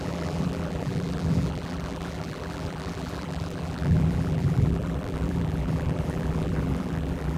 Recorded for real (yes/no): no